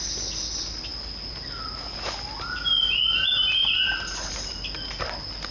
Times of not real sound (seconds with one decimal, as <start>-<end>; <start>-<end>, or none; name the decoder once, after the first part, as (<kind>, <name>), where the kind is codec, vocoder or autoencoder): none